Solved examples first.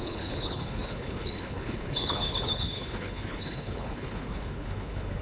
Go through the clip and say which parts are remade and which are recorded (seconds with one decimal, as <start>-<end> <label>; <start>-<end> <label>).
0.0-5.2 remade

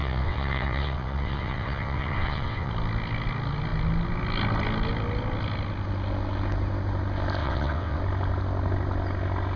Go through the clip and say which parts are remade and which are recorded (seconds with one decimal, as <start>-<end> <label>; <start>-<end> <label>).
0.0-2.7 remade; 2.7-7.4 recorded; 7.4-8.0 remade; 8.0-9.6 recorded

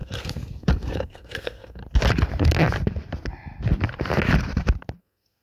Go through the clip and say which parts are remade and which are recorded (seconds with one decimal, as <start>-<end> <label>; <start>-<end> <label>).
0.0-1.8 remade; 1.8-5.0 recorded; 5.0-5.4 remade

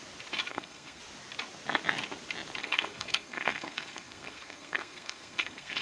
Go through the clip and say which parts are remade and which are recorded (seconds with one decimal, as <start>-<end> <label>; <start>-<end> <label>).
0.0-0.5 recorded; 0.5-1.0 remade; 1.0-2.6 recorded; 2.6-5.8 remade